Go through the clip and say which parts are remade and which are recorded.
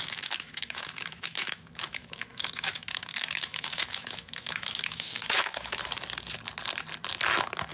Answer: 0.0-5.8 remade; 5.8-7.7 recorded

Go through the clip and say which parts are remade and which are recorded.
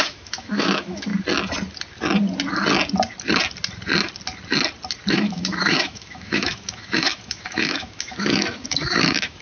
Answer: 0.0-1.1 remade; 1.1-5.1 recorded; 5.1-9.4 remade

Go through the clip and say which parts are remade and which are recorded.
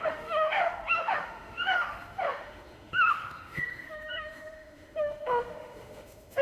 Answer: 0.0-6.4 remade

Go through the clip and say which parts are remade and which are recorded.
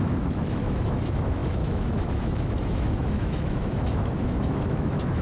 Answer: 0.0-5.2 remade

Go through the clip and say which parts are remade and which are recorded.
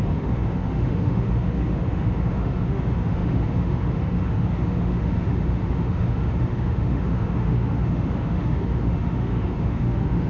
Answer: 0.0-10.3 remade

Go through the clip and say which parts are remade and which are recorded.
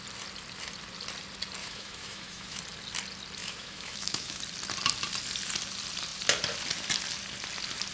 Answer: 0.0-1.6 recorded; 1.6-2.6 remade; 2.6-3.4 recorded; 3.4-4.4 remade; 4.4-7.9 recorded